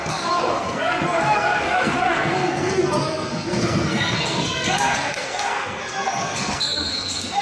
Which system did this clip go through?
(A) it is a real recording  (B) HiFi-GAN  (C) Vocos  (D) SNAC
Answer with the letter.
D